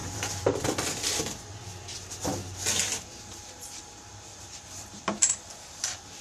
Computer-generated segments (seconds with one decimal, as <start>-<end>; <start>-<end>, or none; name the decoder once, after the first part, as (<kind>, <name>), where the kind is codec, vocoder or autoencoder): 3.0-6.2 (vocoder, BigVGAN v2)

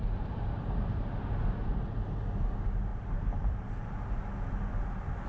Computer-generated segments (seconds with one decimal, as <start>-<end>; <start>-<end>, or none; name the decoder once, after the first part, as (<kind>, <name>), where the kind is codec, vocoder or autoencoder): 0.0-0.9 (vocoder, BigVGAN v2); 2.9-3.8

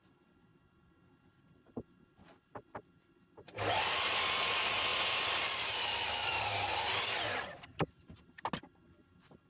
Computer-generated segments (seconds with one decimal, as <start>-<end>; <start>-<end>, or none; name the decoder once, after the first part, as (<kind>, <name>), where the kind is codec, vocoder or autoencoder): 4.9-7.0 (vocoder, BigVGAN v2); 7.5-8.4

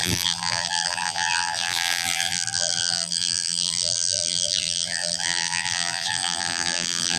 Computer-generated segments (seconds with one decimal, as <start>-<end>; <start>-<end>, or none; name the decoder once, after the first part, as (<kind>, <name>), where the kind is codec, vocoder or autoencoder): 0.0-7.2 (vocoder, BigVGAN v2)

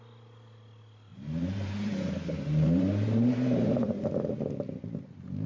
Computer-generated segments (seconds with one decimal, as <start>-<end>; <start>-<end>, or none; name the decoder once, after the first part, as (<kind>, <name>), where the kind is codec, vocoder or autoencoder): 1.1-4.0 (vocoder, BigVGAN v2)